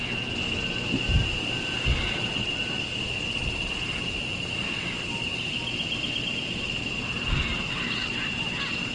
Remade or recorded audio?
recorded